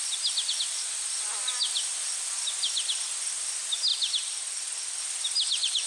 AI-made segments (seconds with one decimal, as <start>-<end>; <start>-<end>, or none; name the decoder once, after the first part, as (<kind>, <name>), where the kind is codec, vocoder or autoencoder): none